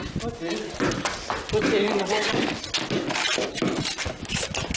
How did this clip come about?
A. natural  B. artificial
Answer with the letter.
A